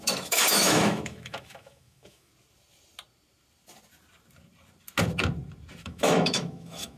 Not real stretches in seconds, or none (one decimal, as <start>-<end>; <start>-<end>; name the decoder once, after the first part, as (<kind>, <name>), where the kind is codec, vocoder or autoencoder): 0.0-2.3 (autoencoder, DAC-VAE); 5.8-7.0